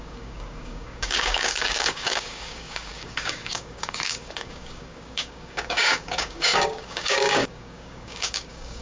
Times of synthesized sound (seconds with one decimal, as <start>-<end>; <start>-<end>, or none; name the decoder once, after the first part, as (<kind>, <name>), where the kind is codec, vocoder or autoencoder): 0.0-8.8 (codec, DAC)